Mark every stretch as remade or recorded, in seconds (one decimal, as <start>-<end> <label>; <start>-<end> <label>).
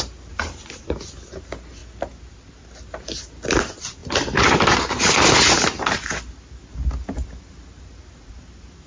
0.0-8.9 recorded